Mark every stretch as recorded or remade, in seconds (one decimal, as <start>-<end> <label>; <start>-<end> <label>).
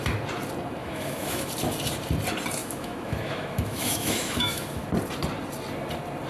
0.0-0.8 recorded; 0.8-1.5 remade; 1.5-2.6 recorded; 2.6-4.9 remade; 4.9-6.3 recorded